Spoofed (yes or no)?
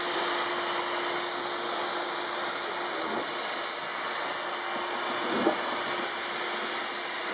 no